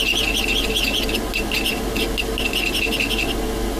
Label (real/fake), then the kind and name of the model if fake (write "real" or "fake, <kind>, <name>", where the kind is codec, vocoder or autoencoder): real